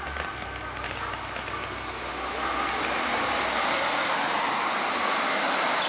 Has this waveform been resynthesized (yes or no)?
no